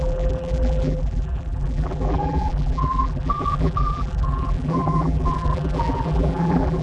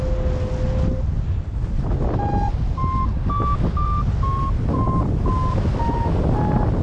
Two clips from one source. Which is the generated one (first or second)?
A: first